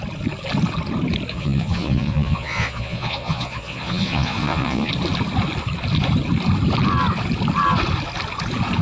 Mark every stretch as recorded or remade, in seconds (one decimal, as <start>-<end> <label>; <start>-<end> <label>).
0.0-1.3 recorded; 1.3-4.9 remade; 4.9-8.8 recorded